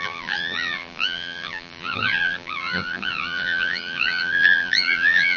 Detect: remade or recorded remade